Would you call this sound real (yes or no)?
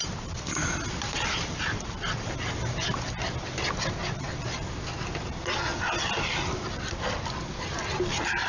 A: yes